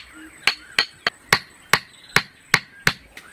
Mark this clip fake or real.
real